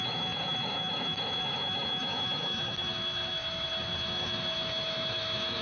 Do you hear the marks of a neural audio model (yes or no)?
yes